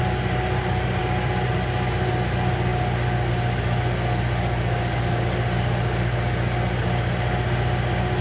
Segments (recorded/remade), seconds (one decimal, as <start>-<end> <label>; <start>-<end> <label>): 0.0-8.2 recorded